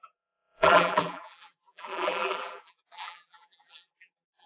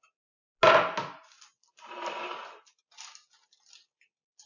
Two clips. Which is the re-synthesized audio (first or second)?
first